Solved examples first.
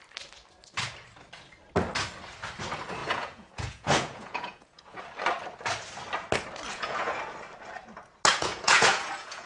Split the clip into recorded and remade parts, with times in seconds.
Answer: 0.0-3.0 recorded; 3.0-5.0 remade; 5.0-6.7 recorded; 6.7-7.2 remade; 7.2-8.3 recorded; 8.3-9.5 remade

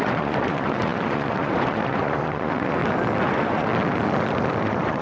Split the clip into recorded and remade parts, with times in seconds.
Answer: 0.0-2.8 remade; 2.8-3.3 recorded; 3.3-3.7 remade; 3.7-4.6 recorded; 4.6-5.0 remade

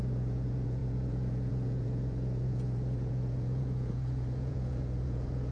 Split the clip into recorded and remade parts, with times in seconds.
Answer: 0.0-5.5 remade

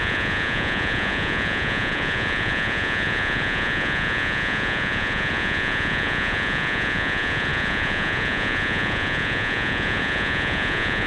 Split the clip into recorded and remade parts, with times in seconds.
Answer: 0.0-11.1 remade